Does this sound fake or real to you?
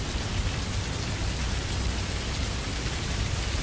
real